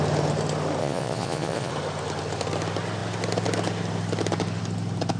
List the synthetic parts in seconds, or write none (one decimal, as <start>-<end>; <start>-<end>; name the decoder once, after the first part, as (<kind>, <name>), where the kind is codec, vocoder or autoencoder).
0.8-1.7 (vocoder, Vocos)